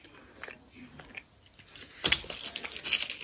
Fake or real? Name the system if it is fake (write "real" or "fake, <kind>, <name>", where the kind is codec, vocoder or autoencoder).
real